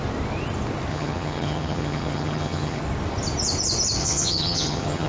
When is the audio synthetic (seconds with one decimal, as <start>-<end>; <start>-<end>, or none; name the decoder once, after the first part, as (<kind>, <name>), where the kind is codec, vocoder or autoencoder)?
0.9-2.8 (vocoder, HiFi-GAN); 4.0-5.1